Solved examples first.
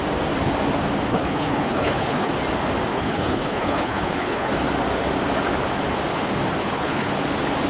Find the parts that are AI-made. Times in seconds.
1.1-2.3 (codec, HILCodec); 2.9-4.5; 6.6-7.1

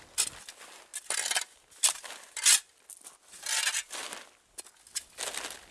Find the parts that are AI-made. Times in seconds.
none

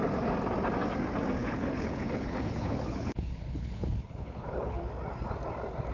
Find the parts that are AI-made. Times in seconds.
1.4-4.9 (codec, HILCodec)

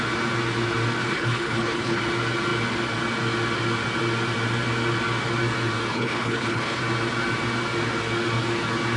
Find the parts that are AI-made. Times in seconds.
1.0-2.0 (codec, HILCodec); 5.9-6.8

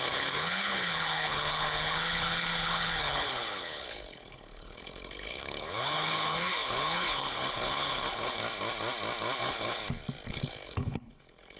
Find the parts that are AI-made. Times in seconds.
0.0-8.4 (codec, HILCodec); 9.4-9.8; 10.3-11.6